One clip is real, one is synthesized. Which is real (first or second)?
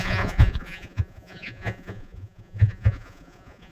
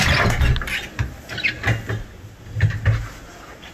second